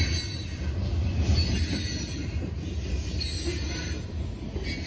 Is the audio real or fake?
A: real